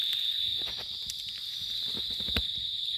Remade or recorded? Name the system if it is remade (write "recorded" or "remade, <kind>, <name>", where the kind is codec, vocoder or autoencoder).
remade, vocoder, BigVGAN v2